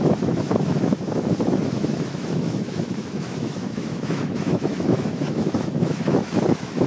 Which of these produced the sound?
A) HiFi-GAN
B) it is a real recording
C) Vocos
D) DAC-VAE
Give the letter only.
D